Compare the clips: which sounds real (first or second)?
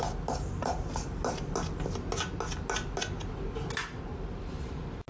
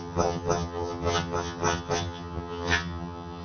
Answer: first